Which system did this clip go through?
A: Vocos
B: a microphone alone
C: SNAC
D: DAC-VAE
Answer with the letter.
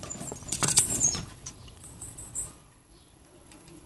A